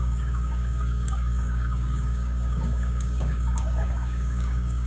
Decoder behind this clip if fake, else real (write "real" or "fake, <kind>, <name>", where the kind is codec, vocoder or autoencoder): fake, codec, DAC